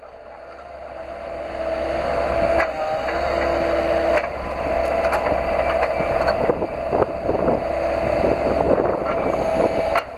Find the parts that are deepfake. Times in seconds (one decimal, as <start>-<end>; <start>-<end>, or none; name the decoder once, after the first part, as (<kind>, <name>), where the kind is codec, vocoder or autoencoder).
none